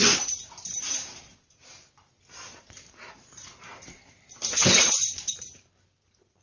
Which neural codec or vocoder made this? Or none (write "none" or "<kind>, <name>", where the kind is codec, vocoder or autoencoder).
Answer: none